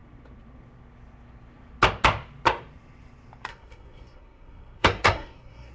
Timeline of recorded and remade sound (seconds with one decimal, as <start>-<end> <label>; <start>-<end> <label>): 0.0-3.5 recorded; 3.5-5.7 remade